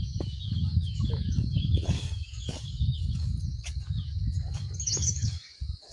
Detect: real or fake fake